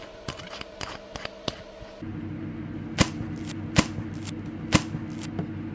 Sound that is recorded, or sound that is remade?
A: recorded